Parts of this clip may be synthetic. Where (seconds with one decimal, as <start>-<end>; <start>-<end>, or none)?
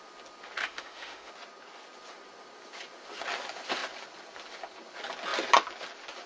0.6-1.3